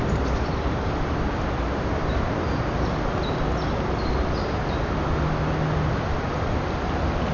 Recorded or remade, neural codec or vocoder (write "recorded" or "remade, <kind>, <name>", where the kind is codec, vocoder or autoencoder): recorded